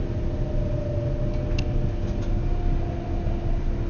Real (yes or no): yes